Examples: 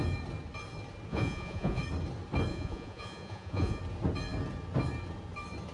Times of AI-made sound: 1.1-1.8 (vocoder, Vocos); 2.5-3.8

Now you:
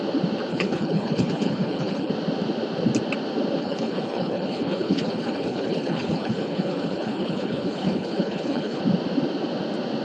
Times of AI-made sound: 0.5-2.1 (codec, HILCodec); 3.6-8.8

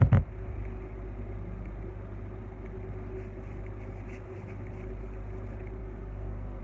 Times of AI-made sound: 5.8-6.6 (codec, SNAC)

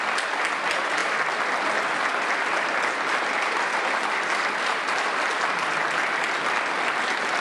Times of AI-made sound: none

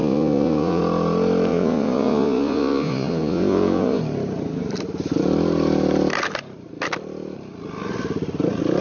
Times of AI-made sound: 0.0-0.8 (vocoder, Vocos); 1.5-4.0